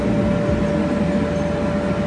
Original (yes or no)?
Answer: yes